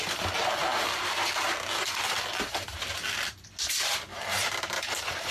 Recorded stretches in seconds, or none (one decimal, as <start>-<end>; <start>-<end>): 0.0-4.1